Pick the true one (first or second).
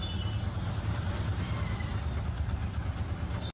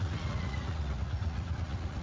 first